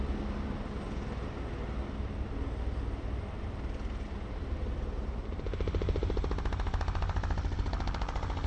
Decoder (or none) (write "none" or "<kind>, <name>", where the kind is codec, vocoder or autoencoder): none